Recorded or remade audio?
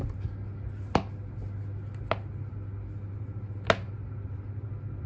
recorded